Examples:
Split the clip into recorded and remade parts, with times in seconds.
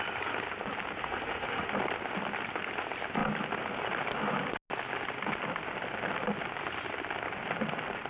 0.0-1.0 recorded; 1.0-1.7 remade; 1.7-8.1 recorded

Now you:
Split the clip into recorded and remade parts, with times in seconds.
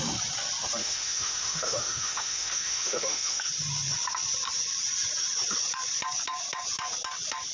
0.0-0.8 recorded; 0.8-3.5 remade; 3.5-7.5 recorded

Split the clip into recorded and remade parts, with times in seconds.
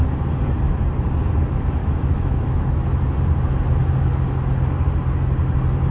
0.0-1.8 recorded; 1.8-2.6 remade; 2.6-5.9 recorded